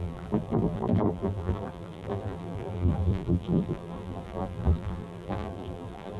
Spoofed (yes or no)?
yes